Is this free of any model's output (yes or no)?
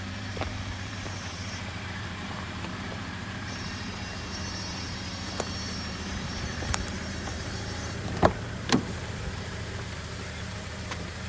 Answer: no